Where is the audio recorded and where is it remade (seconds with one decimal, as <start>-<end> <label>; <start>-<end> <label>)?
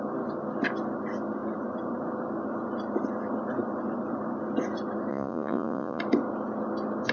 0.0-5.1 recorded; 5.1-6.0 remade; 6.0-7.1 recorded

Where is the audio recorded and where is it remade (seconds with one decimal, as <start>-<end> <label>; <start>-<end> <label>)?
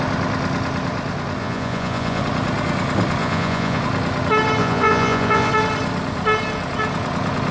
0.0-1.4 recorded; 1.4-2.2 remade; 2.2-3.2 recorded; 3.2-3.8 remade; 3.8-4.6 recorded; 4.6-5.5 remade; 5.5-7.5 recorded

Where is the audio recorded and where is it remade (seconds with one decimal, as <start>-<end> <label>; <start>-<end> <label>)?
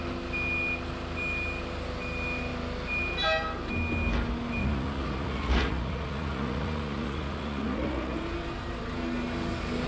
0.0-4.6 recorded; 4.6-8.2 remade; 8.2-9.9 recorded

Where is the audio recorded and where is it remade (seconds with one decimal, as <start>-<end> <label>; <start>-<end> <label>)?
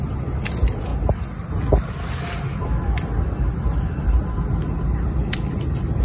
0.0-6.0 recorded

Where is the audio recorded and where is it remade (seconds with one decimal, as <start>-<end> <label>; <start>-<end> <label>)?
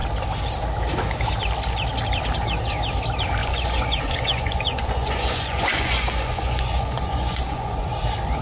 0.0-3.4 recorded; 3.4-7.9 remade; 7.9-8.4 recorded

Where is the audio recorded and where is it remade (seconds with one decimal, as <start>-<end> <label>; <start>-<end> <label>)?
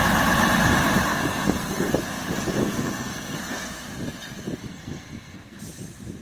0.0-1.1 recorded; 1.1-1.9 remade; 1.9-2.6 recorded; 2.6-3.4 remade; 3.4-4.6 recorded; 4.6-5.6 remade; 5.6-6.2 recorded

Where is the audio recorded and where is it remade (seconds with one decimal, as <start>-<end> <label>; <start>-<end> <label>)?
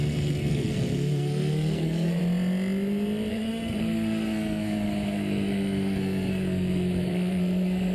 0.0-2.2 remade; 2.2-3.3 recorded; 3.3-7.9 remade